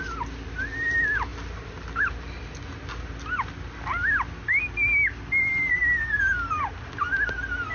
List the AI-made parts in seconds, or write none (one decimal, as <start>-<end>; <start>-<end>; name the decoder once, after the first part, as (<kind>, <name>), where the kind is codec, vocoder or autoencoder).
none